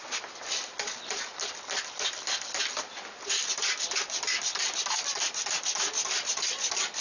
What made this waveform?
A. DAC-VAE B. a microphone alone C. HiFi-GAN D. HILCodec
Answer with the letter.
B